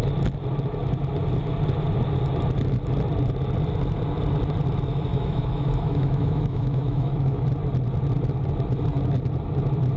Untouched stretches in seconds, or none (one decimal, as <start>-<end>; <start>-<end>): 0.0-5.1; 7.4-10.0